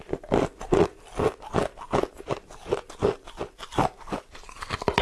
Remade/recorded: recorded